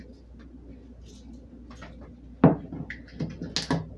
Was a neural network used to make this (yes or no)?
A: no